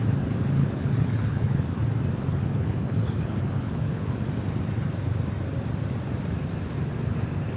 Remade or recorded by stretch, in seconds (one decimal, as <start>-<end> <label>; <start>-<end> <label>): 0.0-0.6 recorded; 0.6-1.8 remade; 1.8-2.3 recorded; 2.3-4.1 remade; 4.1-7.6 recorded